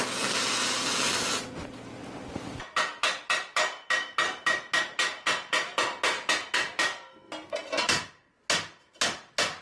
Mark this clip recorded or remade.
recorded